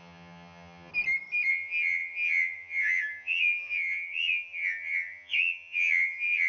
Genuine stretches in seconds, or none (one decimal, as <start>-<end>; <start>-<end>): 0.9-1.5